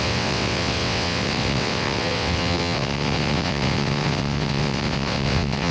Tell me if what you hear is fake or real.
fake